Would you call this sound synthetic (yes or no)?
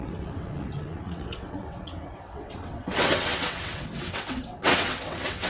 yes